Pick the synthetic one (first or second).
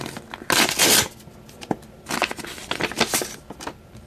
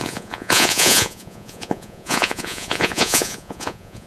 second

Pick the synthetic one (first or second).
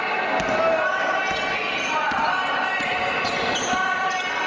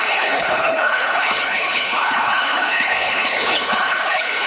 second